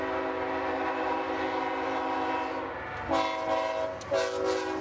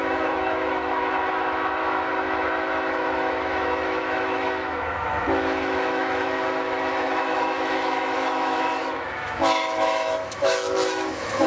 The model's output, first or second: second